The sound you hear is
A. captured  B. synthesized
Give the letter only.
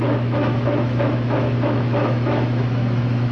B